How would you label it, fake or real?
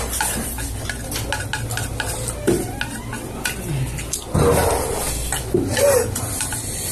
real